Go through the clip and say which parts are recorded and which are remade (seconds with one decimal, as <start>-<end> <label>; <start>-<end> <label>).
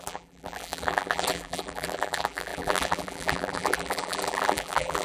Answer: 0.0-5.0 remade